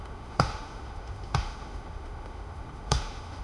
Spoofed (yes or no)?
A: yes